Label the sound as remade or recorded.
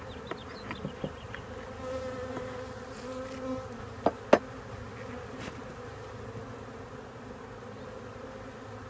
recorded